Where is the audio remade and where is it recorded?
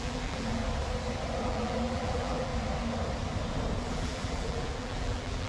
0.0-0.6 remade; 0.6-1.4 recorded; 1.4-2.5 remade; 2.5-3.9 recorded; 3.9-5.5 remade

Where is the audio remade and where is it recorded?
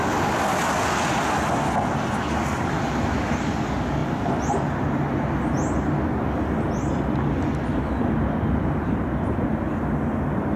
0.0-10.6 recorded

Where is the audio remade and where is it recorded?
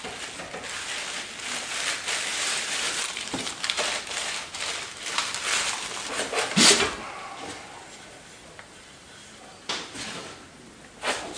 0.0-2.3 recorded; 2.3-3.5 remade; 3.5-11.4 recorded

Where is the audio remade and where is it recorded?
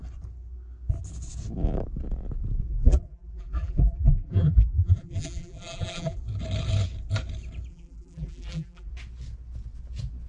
0.0-2.7 recorded; 2.7-6.2 remade; 6.2-7.7 recorded; 7.7-8.9 remade; 8.9-10.3 recorded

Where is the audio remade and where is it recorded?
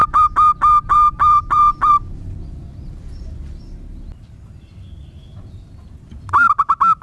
0.0-1.9 remade; 1.9-7.0 recorded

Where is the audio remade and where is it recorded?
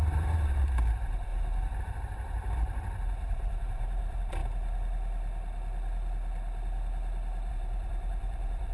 0.0-1.3 remade; 1.3-1.8 recorded; 1.8-4.4 remade; 4.4-7.5 recorded; 7.5-8.7 remade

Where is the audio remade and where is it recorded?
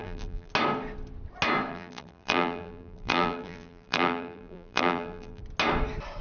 0.0-0.5 remade; 0.5-1.7 recorded; 1.7-5.4 remade; 5.4-6.2 recorded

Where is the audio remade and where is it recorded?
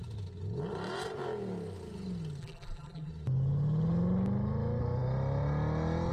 0.0-2.4 recorded; 2.4-3.1 remade; 3.1-6.1 recorded